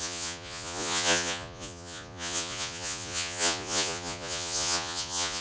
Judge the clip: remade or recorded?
remade